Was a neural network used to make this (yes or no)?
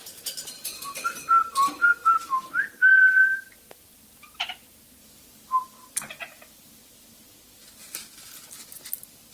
no